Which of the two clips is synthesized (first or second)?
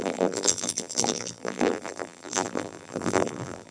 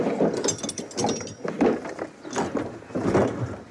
first